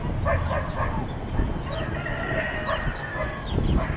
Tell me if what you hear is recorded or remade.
recorded